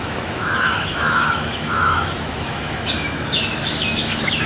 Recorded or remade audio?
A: remade